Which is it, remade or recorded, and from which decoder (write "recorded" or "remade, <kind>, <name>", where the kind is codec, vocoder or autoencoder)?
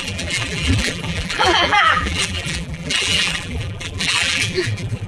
remade, vocoder, BigVGAN v2